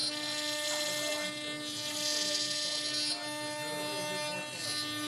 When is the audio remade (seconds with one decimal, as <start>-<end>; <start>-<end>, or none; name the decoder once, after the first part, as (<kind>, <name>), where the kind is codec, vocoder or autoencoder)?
none